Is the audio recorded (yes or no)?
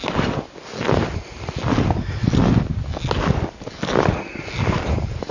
yes